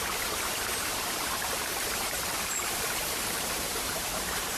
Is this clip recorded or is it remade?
remade